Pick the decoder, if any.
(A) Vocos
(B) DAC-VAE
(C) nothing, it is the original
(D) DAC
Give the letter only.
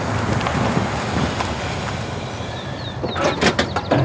C